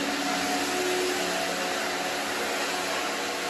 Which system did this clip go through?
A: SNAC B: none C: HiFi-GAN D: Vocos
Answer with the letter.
B